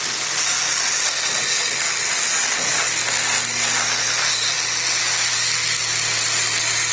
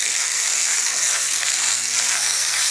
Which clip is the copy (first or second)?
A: second